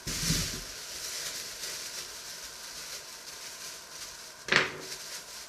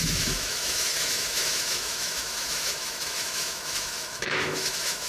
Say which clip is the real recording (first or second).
first